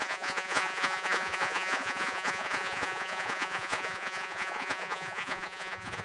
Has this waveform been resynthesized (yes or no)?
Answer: yes